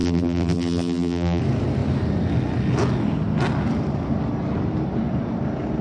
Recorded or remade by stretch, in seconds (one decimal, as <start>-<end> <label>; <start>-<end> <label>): 0.0-1.4 remade; 1.4-5.8 recorded